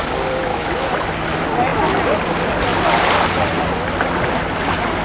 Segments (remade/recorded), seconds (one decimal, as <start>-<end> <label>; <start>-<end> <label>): 0.0-0.5 recorded; 0.5-1.0 remade; 1.0-5.0 recorded